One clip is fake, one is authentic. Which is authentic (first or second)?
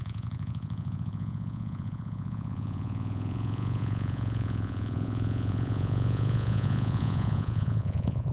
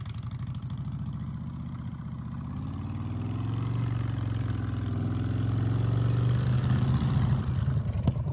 second